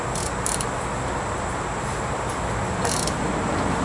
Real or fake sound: real